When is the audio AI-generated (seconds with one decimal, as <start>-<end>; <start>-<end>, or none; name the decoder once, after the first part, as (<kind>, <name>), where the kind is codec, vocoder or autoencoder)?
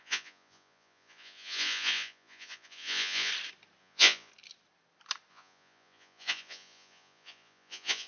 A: 0.0-3.3 (vocoder, Vocos); 3.8-4.3; 5.3-8.1